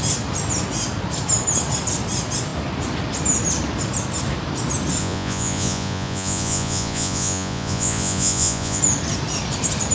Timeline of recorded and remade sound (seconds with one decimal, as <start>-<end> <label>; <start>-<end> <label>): 0.0-5.0 recorded; 5.0-8.8 remade; 8.8-9.9 recorded

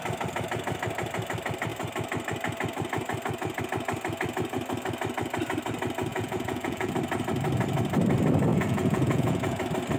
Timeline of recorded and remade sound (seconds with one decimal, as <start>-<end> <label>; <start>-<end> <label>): 0.0-6.1 recorded; 6.1-6.9 remade; 6.9-8.5 recorded; 8.5-9.6 remade; 9.6-10.0 recorded

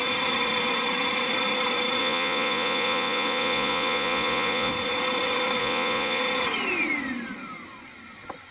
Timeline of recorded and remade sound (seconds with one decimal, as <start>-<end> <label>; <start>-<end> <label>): 0.0-2.0 recorded; 2.0-4.7 remade; 4.7-5.6 recorded; 5.6-6.2 remade; 6.2-8.5 recorded

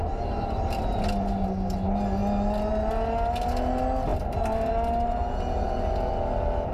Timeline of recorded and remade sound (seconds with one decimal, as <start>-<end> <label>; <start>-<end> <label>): 0.0-6.7 recorded

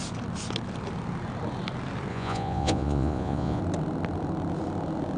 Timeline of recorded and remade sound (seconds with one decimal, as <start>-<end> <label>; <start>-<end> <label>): 0.0-2.1 recorded; 2.1-3.6 remade; 3.6-5.2 recorded

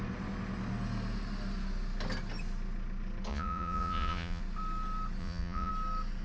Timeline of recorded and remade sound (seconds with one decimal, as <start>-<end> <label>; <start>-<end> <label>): 0.0-3.3 recorded; 3.3-4.4 remade; 4.4-5.2 recorded; 5.2-5.7 remade; 5.7-6.2 recorded